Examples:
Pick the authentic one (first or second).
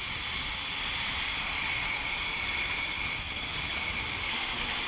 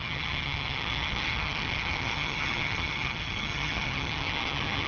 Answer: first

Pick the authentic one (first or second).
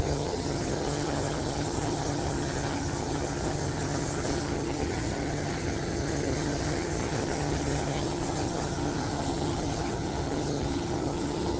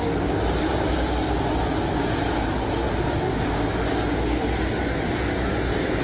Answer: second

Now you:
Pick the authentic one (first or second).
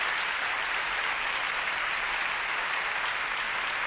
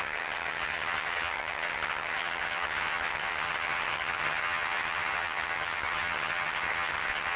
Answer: first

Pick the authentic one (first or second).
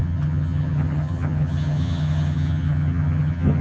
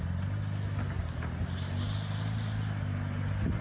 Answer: second